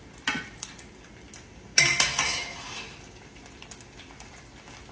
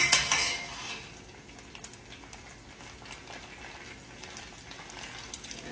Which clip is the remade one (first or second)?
first